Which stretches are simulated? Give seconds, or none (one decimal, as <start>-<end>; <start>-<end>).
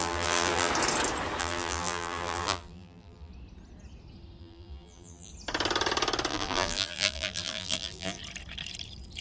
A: 0.0-0.7; 1.4-3.3; 4.4-5.3; 6.3-8.2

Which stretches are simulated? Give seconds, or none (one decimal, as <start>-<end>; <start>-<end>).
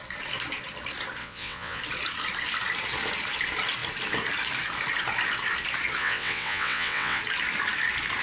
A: 1.2-1.8; 6.0-7.2